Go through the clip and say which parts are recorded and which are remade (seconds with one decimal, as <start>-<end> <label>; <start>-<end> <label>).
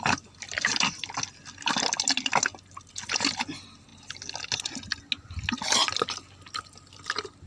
0.0-7.5 recorded